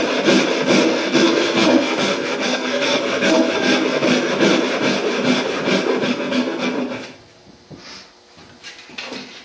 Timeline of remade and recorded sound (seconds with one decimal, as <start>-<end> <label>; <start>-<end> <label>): 0.0-0.9 recorded; 0.9-4.3 remade; 4.3-6.1 recorded; 6.1-6.7 remade; 6.7-9.4 recorded